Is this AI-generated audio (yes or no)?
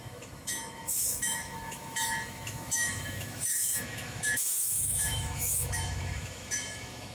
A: yes